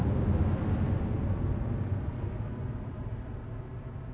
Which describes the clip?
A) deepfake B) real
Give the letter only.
B